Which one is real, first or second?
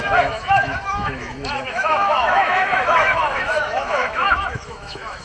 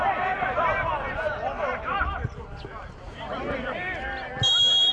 second